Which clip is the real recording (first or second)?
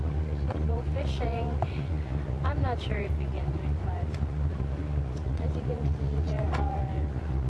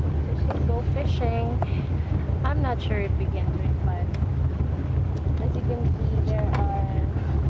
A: second